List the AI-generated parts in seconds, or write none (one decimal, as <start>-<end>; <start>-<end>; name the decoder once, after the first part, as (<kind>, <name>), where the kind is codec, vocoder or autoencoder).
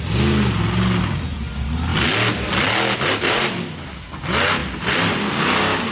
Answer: none